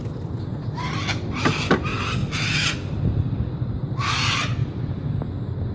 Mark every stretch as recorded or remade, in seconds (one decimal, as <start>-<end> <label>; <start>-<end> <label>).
0.0-5.7 recorded